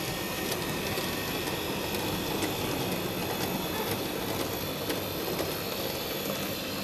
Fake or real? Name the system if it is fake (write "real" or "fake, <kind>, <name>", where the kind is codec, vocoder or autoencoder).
real